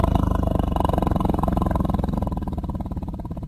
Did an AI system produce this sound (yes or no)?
no